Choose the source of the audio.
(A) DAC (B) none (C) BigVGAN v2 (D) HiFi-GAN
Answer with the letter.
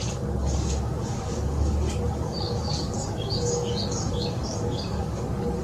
A